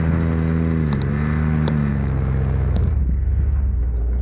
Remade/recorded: recorded